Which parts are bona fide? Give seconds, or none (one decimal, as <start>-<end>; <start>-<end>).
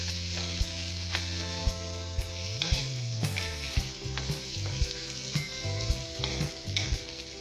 none